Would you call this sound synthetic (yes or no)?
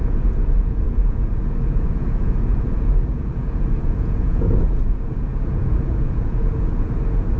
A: yes